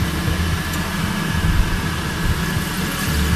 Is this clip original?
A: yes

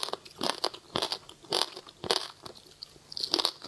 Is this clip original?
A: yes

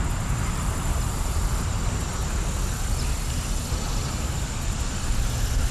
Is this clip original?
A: yes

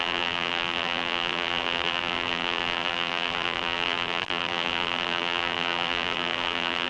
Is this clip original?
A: no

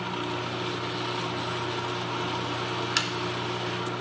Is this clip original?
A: yes